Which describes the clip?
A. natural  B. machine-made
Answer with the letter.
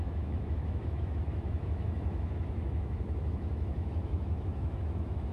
B